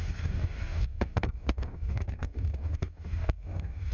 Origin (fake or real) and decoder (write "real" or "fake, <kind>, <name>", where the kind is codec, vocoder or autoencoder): fake, codec, DAC